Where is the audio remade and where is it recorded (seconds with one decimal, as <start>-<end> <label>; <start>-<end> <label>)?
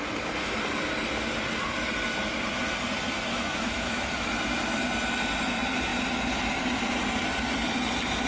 0.0-3.3 recorded; 3.3-4.3 remade; 4.3-8.3 recorded